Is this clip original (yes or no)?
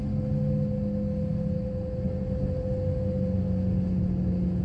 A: yes